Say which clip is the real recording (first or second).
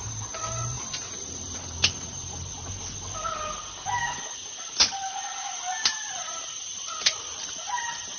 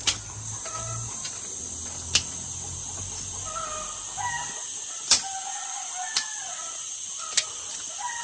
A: second